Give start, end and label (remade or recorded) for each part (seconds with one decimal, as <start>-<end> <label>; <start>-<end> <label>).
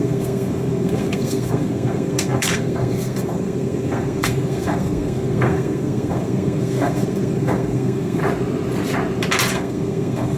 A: 0.0-8.2 remade; 8.2-9.5 recorded; 9.5-10.4 remade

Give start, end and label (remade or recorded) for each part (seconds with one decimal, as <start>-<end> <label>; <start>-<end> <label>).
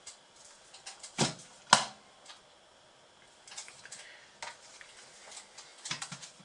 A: 0.0-5.7 recorded; 5.7-6.4 remade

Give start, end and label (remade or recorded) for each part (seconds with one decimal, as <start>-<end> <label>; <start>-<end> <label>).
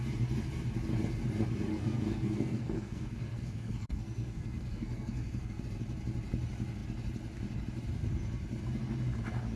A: 0.0-1.7 recorded; 1.7-5.6 remade; 5.6-9.6 recorded